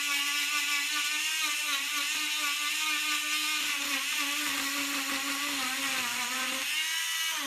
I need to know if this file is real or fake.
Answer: real